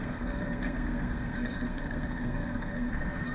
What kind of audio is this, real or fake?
fake